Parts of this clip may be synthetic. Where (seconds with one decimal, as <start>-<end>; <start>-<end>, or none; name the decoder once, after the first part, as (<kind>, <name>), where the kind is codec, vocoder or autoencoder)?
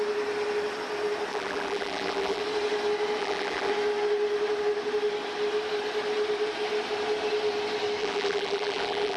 1.3-2.4 (vocoder, BigVGAN v2); 3.2-3.7; 8.0-9.2